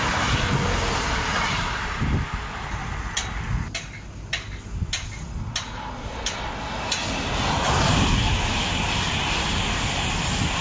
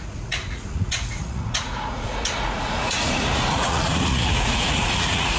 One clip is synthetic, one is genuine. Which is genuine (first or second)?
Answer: first